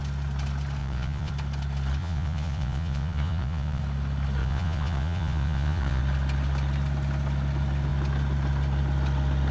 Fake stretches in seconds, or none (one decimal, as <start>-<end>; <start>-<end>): 0.8-1.3; 2.0-3.8; 4.4-6.0